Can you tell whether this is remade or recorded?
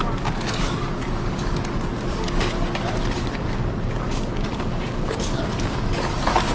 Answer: remade